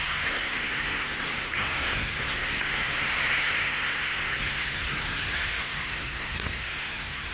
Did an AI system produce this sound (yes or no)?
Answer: yes